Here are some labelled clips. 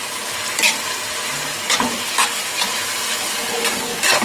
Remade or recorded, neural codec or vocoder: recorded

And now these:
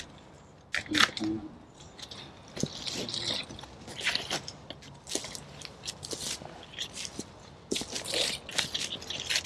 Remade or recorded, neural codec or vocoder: recorded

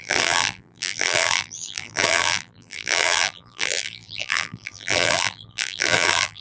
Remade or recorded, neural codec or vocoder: remade, vocoder, BigVGAN v2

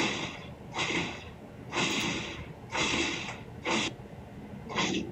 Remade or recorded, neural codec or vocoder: recorded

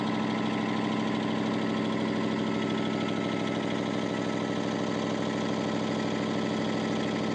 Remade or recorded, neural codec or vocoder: recorded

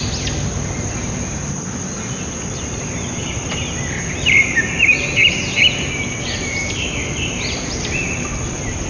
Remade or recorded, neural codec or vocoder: recorded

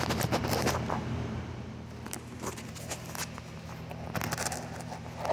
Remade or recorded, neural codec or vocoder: recorded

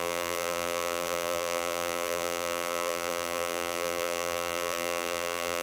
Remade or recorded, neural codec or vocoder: remade, vocoder, BigVGAN v2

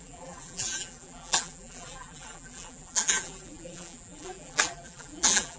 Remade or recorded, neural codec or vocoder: remade, vocoder, BigVGAN v2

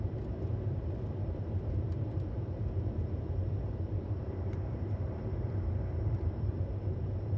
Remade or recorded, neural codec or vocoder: remade, vocoder, BigVGAN v2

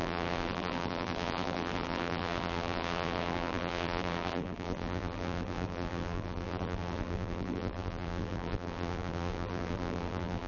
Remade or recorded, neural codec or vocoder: remade, vocoder, BigVGAN v2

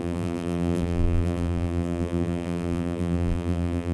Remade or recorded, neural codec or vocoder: remade, vocoder, BigVGAN v2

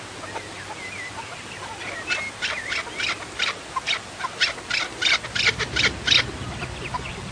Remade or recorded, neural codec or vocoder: recorded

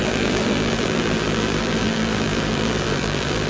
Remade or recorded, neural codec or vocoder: remade, vocoder, BigVGAN v2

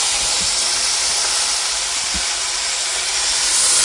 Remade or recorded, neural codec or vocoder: recorded